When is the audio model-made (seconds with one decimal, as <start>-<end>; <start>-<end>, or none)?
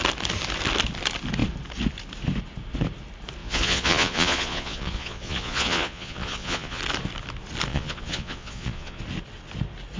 3.4-6.8; 7.7-9.0